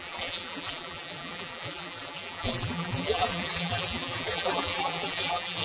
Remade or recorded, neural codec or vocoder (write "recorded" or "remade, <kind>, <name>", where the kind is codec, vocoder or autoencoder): remade, vocoder, BigVGAN v2